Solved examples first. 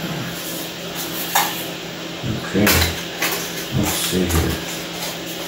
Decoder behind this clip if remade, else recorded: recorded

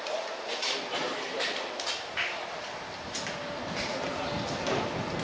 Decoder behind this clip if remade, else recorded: recorded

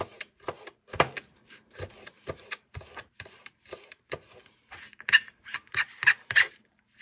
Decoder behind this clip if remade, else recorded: remade, vocoder, BigVGAN v2